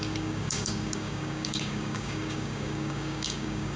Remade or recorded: remade